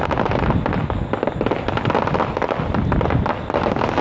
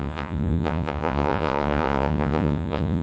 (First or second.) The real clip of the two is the first